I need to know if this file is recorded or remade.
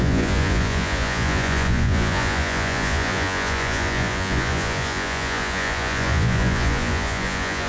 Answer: remade